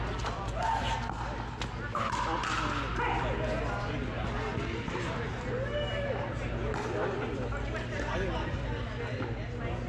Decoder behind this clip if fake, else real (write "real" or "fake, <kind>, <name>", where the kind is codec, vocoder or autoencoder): real